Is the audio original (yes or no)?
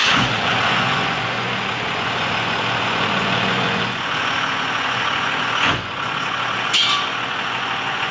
no